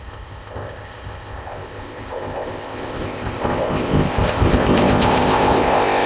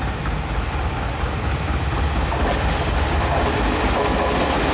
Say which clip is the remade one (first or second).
first